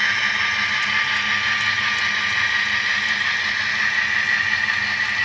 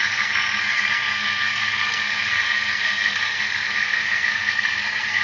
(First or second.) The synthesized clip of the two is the second